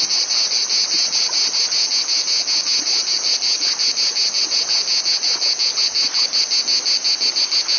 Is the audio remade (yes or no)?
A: no